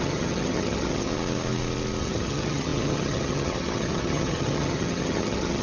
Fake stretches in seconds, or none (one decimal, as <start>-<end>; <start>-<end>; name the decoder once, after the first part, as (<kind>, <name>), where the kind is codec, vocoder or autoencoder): 0.0-1.1 (vocoder, HiFi-GAN); 2.0-5.6

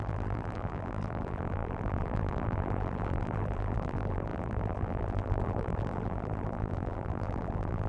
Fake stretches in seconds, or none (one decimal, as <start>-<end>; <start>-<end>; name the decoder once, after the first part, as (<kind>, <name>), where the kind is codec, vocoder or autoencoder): 0.0-7.9 (vocoder, BigVGAN v2)